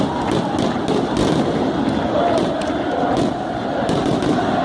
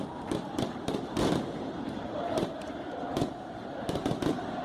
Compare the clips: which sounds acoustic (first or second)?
first